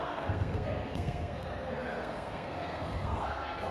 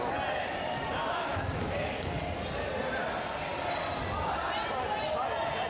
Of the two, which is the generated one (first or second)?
first